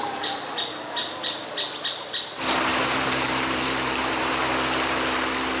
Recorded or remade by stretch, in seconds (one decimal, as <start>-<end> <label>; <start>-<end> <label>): 0.0-1.0 recorded; 1.0-1.5 remade; 1.5-2.7 recorded; 2.7-4.3 remade; 4.3-5.6 recorded